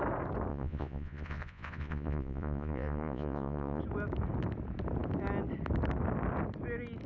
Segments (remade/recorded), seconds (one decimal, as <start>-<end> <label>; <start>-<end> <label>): 0.0-0.5 recorded; 0.5-3.8 remade; 3.8-7.1 recorded